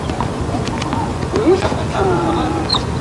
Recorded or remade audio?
remade